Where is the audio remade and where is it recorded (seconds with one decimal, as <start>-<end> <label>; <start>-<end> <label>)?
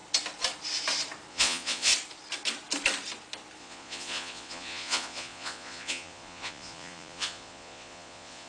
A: 0.0-1.3 recorded; 1.3-1.9 remade; 1.9-3.6 recorded; 3.6-8.5 remade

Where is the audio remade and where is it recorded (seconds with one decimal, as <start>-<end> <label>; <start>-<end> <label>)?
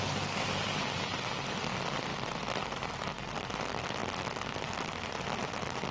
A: 0.0-5.9 recorded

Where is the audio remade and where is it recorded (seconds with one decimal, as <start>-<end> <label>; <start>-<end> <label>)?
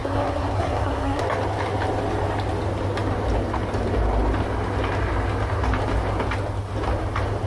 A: 0.0-1.2 remade; 1.2-7.5 recorded